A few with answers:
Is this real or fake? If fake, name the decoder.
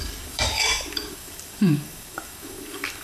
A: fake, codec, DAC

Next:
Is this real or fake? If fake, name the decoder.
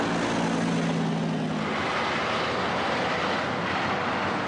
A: real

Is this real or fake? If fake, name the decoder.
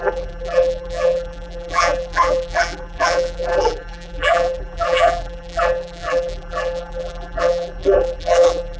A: fake, vocoder, BigVGAN v2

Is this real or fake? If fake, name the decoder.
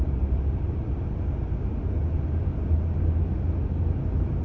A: real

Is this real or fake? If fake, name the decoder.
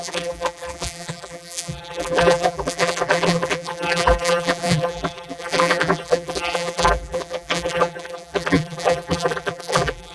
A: fake, vocoder, BigVGAN v2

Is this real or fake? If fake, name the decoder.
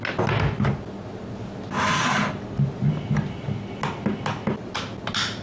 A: real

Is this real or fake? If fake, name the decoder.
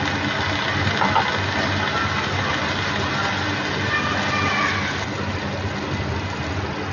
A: real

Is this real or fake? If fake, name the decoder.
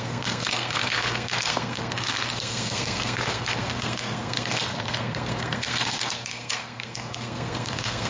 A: fake, codec, SNAC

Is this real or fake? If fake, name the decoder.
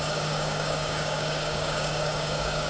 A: fake, codec, DAC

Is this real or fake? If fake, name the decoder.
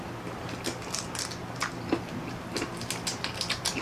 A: real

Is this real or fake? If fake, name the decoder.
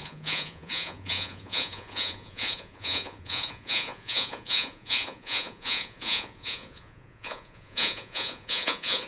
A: fake, vocoder, Vocos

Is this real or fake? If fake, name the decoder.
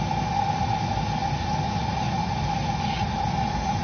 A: real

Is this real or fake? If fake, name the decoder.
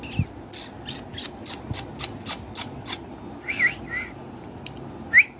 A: real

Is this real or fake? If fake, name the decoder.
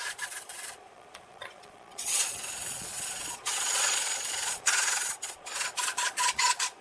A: fake, vocoder, Vocos